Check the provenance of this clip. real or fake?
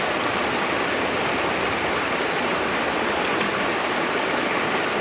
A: real